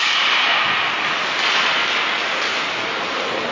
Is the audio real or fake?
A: real